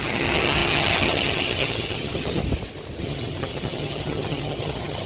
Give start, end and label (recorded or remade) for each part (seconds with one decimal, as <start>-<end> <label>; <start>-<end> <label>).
0.0-2.4 remade; 2.4-3.0 recorded; 3.0-5.1 remade